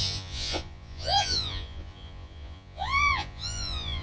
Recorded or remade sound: remade